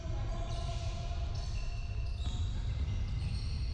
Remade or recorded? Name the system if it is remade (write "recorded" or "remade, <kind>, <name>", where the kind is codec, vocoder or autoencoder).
recorded